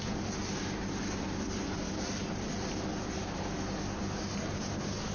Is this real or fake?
real